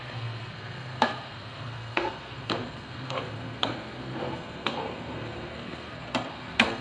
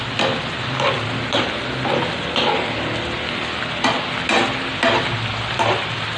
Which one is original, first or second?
second